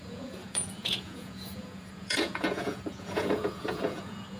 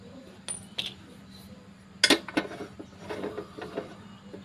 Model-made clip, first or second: first